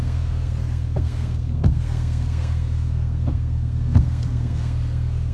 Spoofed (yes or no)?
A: yes